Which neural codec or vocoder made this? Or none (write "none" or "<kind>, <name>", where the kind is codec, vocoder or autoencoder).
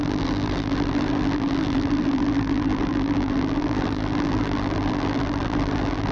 vocoder, BigVGAN v2